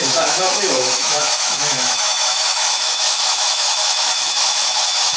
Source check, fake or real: fake